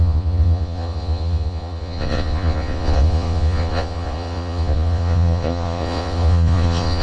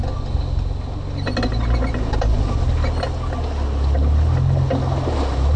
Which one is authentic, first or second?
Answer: second